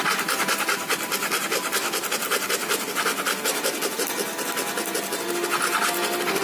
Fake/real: real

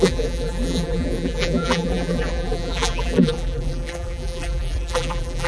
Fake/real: fake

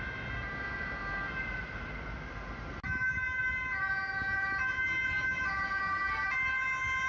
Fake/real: real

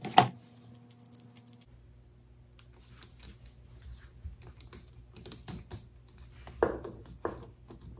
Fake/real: real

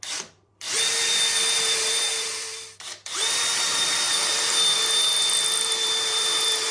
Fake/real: fake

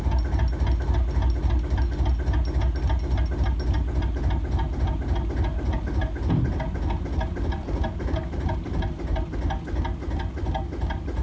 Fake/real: real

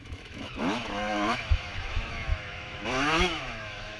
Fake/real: fake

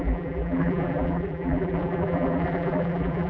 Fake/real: fake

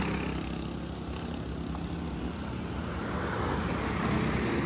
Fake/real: real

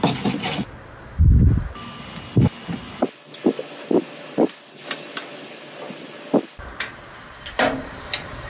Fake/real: real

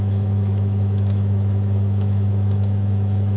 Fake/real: fake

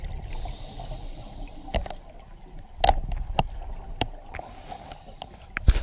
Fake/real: real